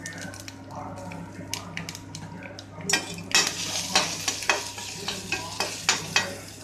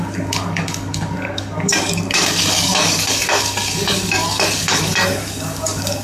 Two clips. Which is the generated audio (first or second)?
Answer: second